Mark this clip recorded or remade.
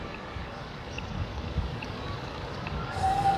remade